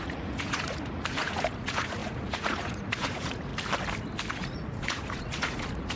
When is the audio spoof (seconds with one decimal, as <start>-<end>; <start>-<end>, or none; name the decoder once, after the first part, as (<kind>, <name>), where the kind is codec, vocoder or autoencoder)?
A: 0.0-3.5 (vocoder, Vocos); 4.3-6.0